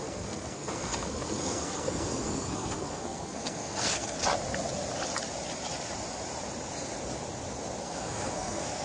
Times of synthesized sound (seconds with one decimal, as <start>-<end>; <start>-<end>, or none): 0.0-4.2; 7.8-8.8